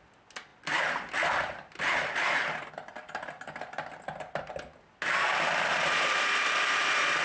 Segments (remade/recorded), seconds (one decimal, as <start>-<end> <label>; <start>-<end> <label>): 0.0-7.2 recorded

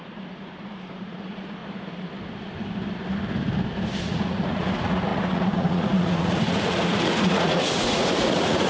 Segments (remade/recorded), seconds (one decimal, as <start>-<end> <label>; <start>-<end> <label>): 0.0-1.6 remade; 1.6-4.0 recorded; 4.0-8.7 remade

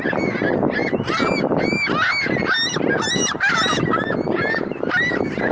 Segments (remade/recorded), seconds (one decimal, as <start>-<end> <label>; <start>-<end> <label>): 0.0-5.5 recorded

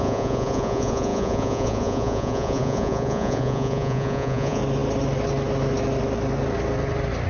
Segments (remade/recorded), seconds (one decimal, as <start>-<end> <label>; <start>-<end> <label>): 0.0-4.6 remade; 4.6-7.3 recorded

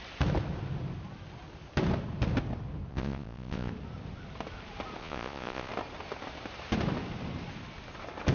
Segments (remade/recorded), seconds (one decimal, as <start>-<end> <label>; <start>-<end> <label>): 0.0-2.9 recorded; 2.9-3.7 remade; 3.7-5.0 recorded; 5.0-5.7 remade; 5.7-8.3 recorded

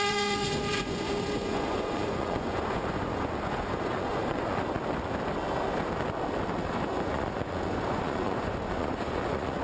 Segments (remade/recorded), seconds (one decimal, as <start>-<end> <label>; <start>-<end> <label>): 0.0-4.6 remade; 4.6-6.9 recorded; 6.9-9.6 remade